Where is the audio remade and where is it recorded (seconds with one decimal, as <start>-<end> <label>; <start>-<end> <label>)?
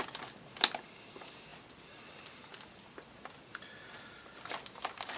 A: 0.0-5.2 recorded